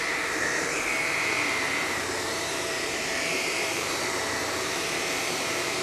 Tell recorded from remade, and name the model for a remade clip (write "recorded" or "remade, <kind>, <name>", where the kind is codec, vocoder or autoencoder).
remade, vocoder, BigVGAN v2